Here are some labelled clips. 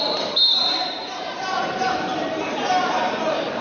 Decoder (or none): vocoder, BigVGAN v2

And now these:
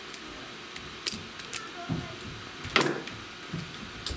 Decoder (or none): none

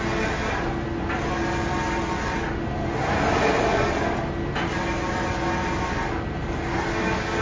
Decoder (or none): none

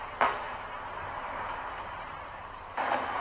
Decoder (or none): vocoder, BigVGAN v2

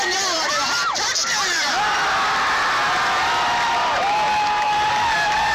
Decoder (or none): vocoder, BigVGAN v2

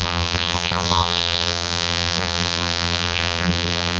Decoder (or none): vocoder, BigVGAN v2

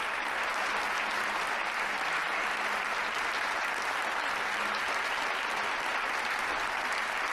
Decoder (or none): none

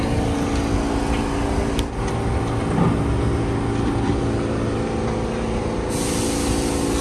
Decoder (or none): none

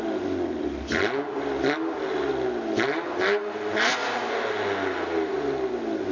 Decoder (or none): none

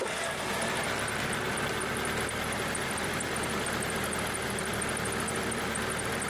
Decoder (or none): none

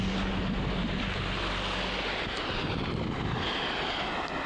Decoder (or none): none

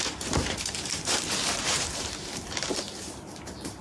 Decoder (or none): vocoder, BigVGAN v2